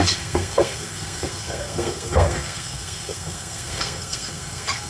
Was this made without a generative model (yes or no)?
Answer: no